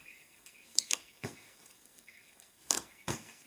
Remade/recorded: remade